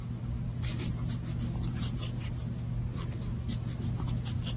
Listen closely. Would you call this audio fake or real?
real